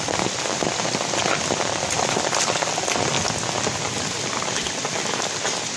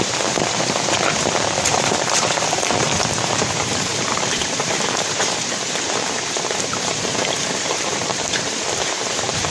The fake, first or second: second